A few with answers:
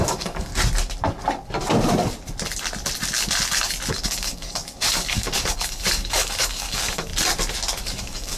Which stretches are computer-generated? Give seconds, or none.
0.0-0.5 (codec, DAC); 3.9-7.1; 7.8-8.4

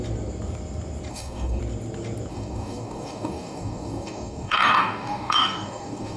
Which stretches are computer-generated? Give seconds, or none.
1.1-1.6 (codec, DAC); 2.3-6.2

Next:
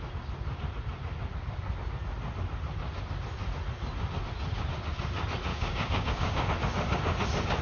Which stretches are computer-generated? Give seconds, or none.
5.5-6.5 (codec, DAC)

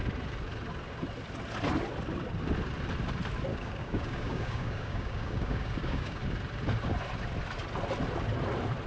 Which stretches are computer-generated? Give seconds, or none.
3.5-6.2 (codec, DAC)

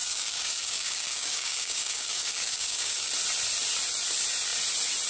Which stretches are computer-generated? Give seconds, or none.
0.0-3.1 (codec, DAC)

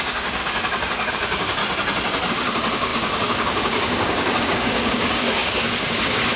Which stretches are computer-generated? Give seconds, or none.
0.0-0.4 (codec, DAC); 1.1-1.6; 2.3-6.4

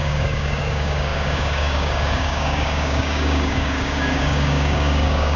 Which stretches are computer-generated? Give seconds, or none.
0.0-5.4 (codec, DAC)

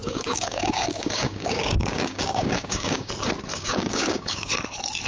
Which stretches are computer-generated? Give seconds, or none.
0.0-3.1 (codec, DAC); 3.5-4.5